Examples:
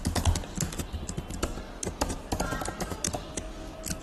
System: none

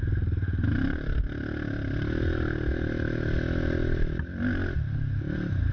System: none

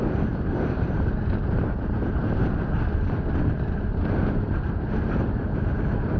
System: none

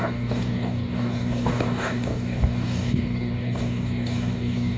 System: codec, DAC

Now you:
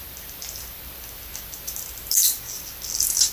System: none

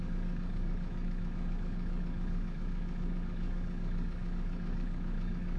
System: codec, DAC